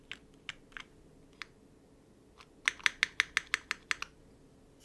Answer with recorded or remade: recorded